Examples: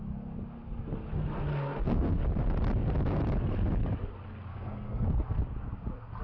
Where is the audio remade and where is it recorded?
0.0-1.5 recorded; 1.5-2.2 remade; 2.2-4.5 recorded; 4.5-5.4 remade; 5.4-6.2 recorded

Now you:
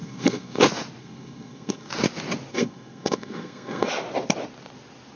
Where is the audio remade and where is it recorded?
0.0-0.6 remade; 0.6-1.0 recorded; 1.0-1.9 remade; 1.9-2.5 recorded; 2.5-3.9 remade; 3.9-5.2 recorded

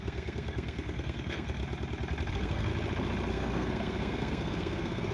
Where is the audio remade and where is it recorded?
0.0-1.6 remade; 1.6-2.3 recorded; 2.3-2.7 remade; 2.7-3.3 recorded; 3.3-5.1 remade

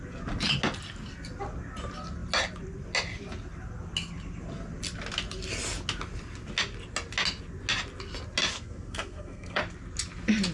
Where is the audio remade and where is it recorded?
0.0-8.5 recorded; 8.5-9.6 remade; 9.6-10.5 recorded

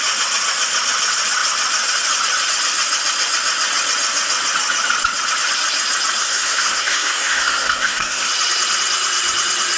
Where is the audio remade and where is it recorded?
0.0-6.2 recorded; 6.2-8.3 remade; 8.3-9.8 recorded